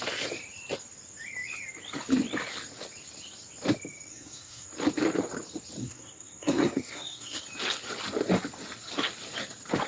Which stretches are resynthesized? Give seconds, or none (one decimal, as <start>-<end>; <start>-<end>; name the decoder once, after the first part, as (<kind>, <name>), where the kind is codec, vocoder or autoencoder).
4.1-4.7 (codec, SNAC); 5.8-7.4